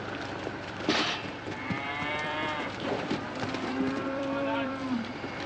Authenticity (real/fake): fake